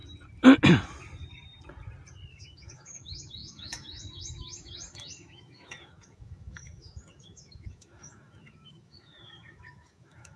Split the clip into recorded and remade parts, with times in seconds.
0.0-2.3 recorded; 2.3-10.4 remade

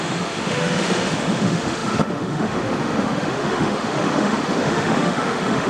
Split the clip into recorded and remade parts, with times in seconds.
0.0-5.7 remade